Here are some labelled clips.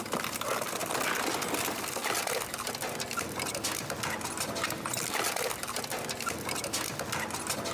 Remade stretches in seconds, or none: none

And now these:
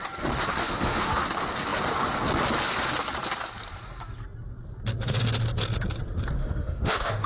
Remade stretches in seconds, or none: 0.6-1.2; 6.4-7.3

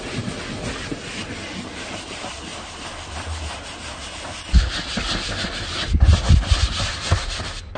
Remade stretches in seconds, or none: none

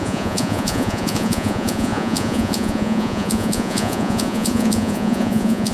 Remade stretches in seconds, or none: 0.0-5.7

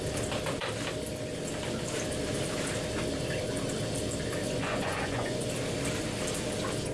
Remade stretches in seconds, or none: 4.4-5.5

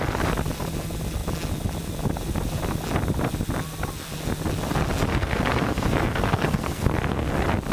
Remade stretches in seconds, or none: 5.1-7.3

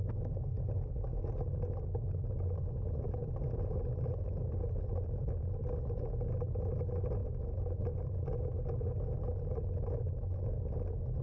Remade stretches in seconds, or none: none